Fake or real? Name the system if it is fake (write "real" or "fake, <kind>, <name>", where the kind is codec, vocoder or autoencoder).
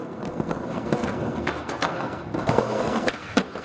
fake, codec, SNAC